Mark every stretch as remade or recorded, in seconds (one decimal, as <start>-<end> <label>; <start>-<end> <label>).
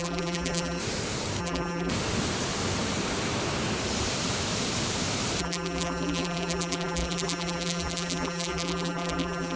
0.0-0.8 remade; 0.8-1.4 recorded; 1.4-1.9 remade; 1.9-5.4 recorded; 5.4-9.6 remade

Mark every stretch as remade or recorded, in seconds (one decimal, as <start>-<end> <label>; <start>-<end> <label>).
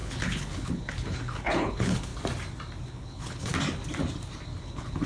0.0-2.1 remade; 2.1-2.9 recorded; 2.9-3.5 remade; 3.5-4.6 recorded; 4.6-5.1 remade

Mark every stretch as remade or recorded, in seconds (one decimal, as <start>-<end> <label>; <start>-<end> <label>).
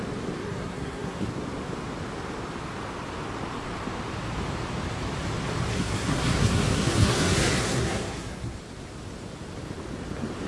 0.0-0.4 recorded; 0.4-1.3 remade; 1.3-5.7 recorded; 5.7-8.6 remade; 8.6-10.5 recorded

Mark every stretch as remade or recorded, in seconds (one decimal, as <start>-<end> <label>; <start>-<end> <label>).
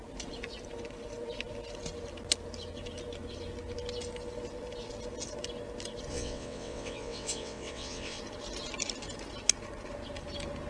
0.0-6.1 recorded; 6.1-8.2 remade; 8.2-10.7 recorded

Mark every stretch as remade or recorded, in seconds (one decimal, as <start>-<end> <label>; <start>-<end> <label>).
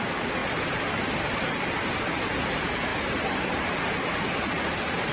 0.0-0.4 remade; 0.4-1.2 recorded; 1.2-2.9 remade; 2.9-3.8 recorded; 3.8-5.1 remade